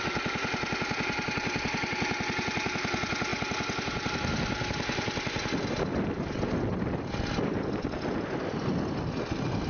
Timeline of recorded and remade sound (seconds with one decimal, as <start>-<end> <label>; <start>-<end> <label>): 0.0-9.7 recorded